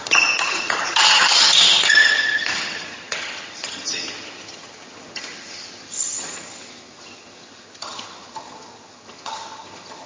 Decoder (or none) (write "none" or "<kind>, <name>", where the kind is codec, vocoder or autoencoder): vocoder, HiFi-GAN